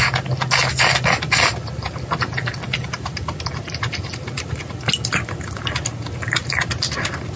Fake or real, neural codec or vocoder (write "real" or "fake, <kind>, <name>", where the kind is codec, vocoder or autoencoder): real